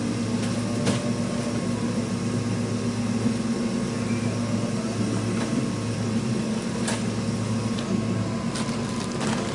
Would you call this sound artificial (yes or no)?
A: no